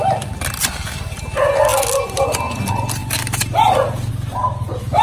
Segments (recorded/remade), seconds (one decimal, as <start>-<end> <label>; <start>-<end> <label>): 0.0-0.6 recorded; 0.6-1.2 remade; 1.2-3.0 recorded; 3.0-4.1 remade; 4.1-5.0 recorded